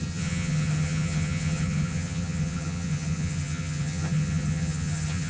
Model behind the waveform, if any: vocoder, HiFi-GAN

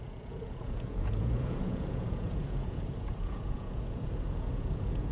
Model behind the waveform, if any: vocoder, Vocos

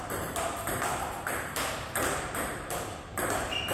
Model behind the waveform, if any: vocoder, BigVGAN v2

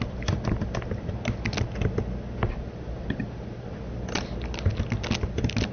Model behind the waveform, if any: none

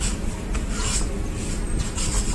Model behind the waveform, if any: none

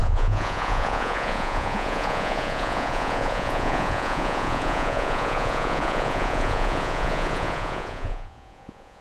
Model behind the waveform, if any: vocoder, Vocos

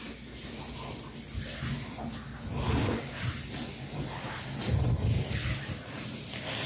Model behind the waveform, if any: none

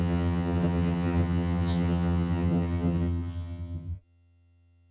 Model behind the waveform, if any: vocoder, HiFi-GAN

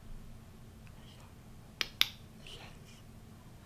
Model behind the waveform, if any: none